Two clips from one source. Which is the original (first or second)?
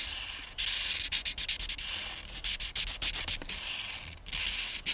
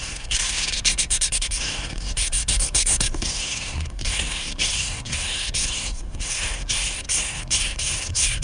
first